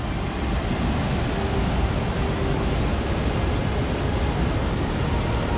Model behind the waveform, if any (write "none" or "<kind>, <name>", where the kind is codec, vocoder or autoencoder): none